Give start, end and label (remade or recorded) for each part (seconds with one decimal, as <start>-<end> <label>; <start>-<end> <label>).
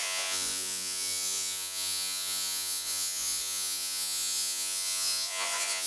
0.0-5.9 remade